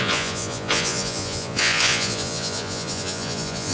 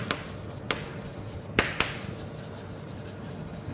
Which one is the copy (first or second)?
first